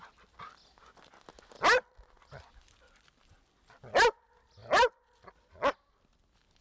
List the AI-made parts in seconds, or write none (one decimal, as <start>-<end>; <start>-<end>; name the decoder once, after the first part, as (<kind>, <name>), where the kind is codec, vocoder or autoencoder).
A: none